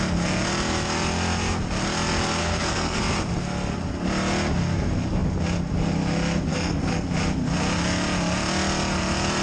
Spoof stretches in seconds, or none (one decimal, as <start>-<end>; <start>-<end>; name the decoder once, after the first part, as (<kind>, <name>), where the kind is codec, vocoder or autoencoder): 2.4-3.0 (codec, SNAC); 6.5-7.1